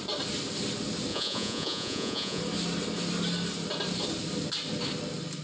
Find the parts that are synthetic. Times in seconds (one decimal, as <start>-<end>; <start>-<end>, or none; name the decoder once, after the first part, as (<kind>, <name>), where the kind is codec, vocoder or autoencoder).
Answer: 1.1-2.4 (vocoder, Vocos)